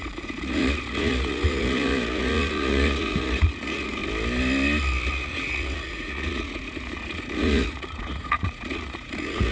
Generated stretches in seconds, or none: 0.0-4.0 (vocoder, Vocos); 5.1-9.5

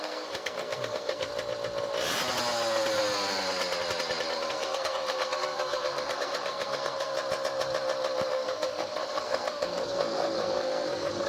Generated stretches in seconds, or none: 0.0-1.3 (codec, SNAC); 4.5-7.1; 8.3-11.3

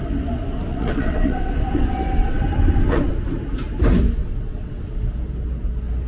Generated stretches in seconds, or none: 0.7-3.1 (vocoder, WaveNeXt); 4.2-4.7

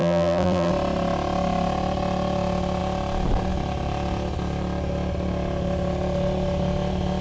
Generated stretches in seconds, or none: 0.0-0.7 (vocoder, BigVGAN v2)

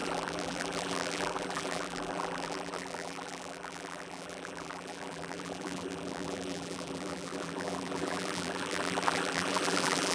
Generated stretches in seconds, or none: 0.0-10.1 (vocoder, BigVGAN v2)

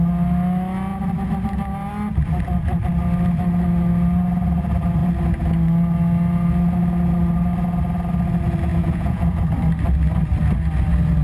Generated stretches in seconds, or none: 8.7-9.4 (vocoder, Vocos)

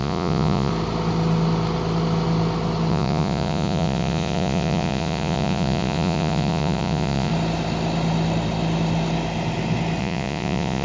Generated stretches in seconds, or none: 0.0-0.7 (vocoder, Vocos); 2.9-7.3; 10.0-10.8